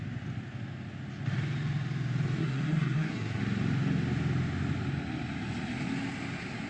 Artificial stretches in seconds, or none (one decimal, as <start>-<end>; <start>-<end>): 2.4-3.4